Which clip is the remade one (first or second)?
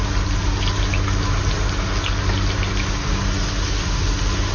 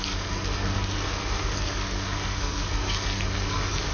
second